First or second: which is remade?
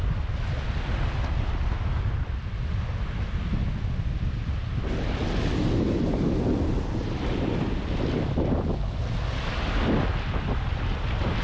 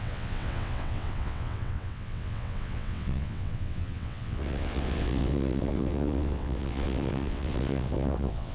second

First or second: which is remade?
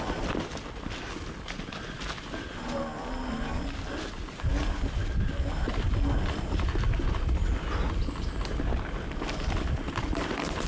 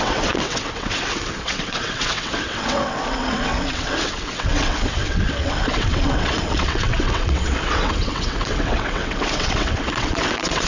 second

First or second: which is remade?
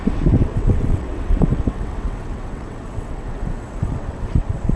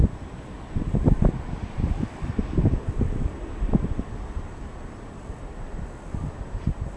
first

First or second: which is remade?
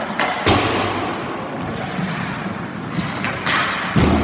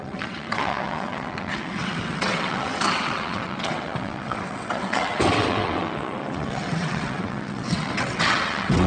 second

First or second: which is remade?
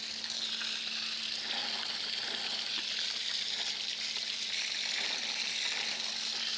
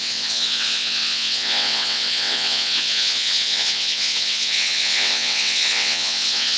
second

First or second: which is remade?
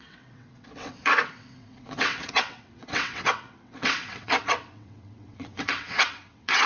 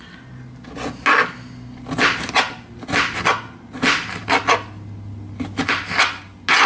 first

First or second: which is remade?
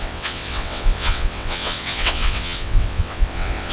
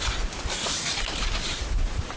first